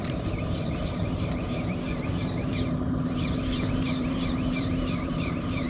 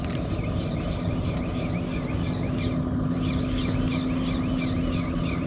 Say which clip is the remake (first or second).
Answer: first